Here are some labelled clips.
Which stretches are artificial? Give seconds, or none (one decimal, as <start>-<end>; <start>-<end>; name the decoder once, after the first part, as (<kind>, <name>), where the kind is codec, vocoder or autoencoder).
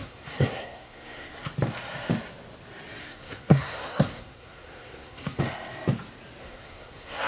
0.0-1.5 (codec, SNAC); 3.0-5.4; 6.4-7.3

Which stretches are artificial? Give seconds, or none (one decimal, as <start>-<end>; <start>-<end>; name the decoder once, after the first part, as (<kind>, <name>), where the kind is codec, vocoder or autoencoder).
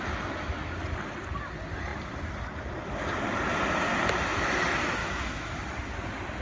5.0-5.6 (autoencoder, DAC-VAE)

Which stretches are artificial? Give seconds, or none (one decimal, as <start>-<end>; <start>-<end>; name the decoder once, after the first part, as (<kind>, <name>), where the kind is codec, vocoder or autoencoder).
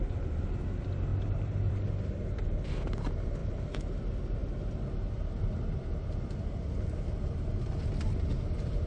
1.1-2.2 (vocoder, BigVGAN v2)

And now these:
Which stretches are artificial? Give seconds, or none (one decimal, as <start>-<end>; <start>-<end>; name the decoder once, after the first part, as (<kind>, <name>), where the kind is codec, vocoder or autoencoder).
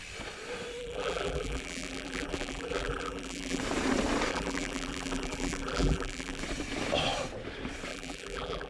0.8-3.6 (vocoder, BigVGAN v2); 4.3-6.4; 7.9-8.7